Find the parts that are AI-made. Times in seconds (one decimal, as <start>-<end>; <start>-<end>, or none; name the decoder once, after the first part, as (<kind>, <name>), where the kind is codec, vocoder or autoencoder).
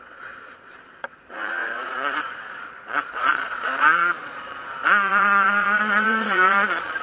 0.0-7.0 (vocoder, Vocos)